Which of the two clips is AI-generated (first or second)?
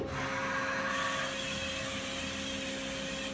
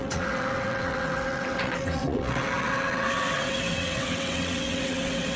second